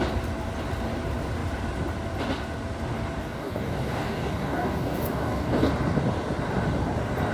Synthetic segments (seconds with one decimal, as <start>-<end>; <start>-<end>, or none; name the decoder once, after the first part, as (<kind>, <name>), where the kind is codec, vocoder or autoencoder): 3.2-5.7 (codec, DAC)

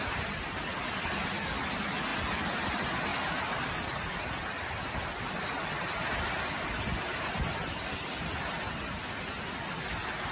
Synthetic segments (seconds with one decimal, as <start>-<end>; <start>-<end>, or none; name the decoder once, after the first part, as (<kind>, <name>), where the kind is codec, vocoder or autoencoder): none

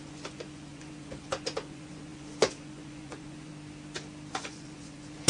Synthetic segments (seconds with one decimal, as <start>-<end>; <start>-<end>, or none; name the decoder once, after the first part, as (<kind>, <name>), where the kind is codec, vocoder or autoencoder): 0.0-3.5 (vocoder, Vocos); 4.3-5.3

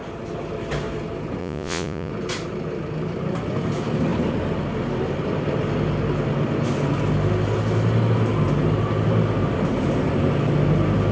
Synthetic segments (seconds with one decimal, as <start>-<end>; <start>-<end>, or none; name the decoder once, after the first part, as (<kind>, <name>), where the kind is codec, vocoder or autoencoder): 1.4-2.1 (vocoder, Vocos)

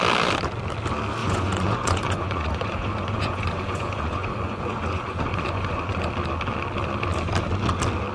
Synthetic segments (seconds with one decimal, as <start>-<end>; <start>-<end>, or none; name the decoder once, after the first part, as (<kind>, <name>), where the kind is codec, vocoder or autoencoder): 1.2-6.1 (vocoder, Vocos)

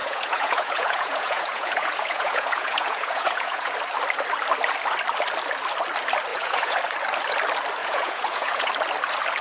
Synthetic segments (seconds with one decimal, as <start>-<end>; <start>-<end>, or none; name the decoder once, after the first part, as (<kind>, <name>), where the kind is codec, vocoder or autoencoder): 0.0-3.7 (vocoder, Vocos); 6.3-6.8; 7.8-8.7